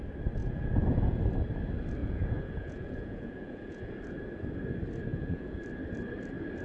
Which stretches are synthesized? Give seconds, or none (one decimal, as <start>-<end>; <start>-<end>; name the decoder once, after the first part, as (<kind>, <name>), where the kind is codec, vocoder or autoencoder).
0.4-1.2 (vocoder, Vocos); 2.0-3.9; 5.1-5.6